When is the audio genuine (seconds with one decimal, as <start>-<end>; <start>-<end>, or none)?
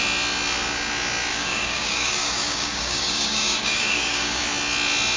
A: 0.0-1.3; 4.4-5.2